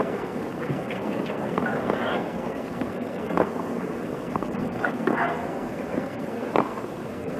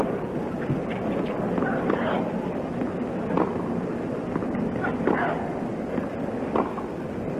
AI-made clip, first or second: first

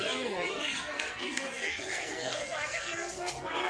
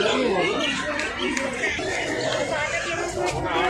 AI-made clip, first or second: first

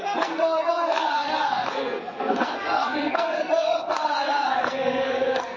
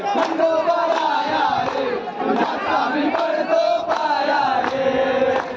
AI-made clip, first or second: first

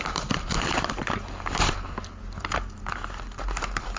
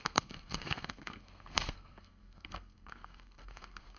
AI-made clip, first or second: second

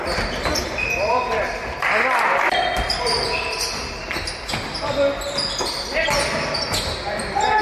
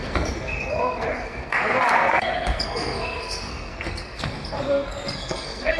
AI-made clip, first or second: second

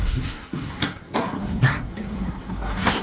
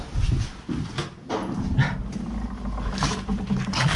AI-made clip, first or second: first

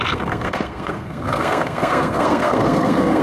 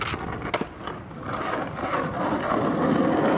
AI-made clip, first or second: first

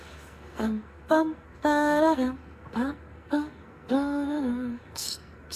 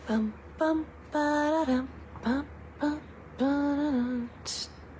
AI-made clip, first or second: first